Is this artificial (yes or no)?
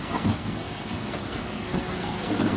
yes